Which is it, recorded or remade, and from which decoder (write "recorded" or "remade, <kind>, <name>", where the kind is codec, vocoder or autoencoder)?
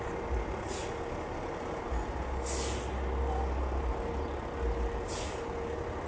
recorded